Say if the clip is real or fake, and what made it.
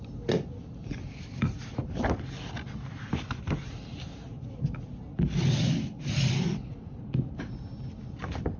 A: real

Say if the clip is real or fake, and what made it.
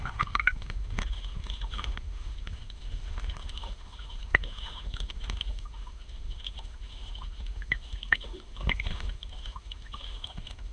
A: fake, autoencoder, DAC-VAE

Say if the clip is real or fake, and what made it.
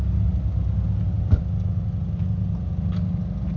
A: real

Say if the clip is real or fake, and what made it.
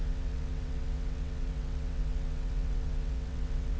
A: fake, vocoder, WaveNeXt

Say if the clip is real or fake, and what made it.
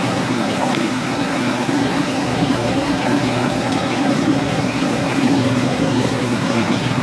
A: fake, codec, SNAC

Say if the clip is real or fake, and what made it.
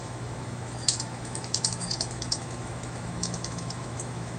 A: fake, autoencoder, DAC-VAE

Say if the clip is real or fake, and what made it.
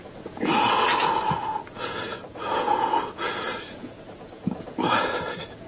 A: fake, vocoder, Vocos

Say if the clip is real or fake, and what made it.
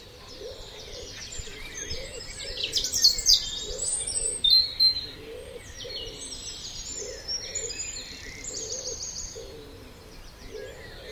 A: fake, vocoder, BigVGAN v2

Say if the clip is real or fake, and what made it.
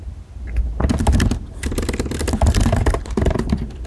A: real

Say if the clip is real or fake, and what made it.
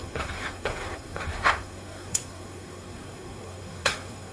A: fake, codec, SNAC